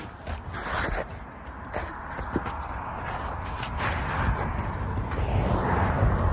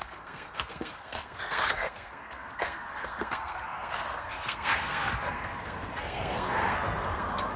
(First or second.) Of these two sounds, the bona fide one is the first